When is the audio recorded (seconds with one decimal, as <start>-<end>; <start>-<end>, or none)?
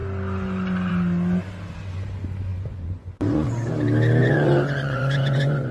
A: 0.0-2.5; 3.7-4.2